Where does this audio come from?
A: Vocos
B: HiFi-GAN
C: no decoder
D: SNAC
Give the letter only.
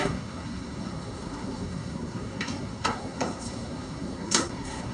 D